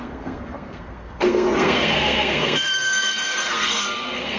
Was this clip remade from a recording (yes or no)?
yes